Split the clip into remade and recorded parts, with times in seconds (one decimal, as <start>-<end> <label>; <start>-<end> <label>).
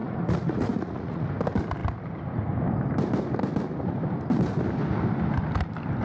0.0-1.3 remade; 1.3-6.0 recorded